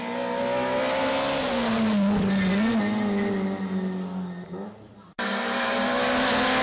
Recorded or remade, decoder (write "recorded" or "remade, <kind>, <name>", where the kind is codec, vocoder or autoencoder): recorded